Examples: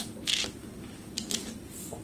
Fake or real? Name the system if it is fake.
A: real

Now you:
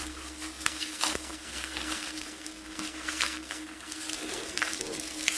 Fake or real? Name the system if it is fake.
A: fake, codec, SNAC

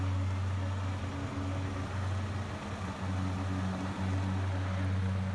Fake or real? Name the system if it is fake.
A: real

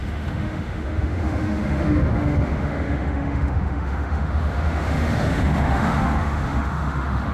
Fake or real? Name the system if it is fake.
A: fake, autoencoder, DAC-VAE